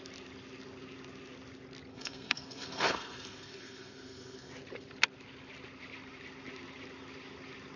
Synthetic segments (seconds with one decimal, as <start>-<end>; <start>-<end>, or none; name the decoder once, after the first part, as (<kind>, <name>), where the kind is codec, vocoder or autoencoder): 1.9-4.5 (codec, SNAC)